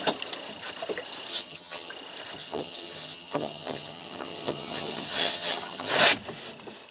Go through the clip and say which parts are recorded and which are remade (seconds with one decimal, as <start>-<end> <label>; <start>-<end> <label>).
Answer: 0.0-1.3 recorded; 1.3-1.9 remade; 1.9-2.4 recorded; 2.4-5.9 remade; 5.9-6.9 recorded